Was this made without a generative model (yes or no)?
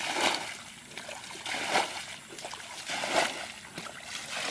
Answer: yes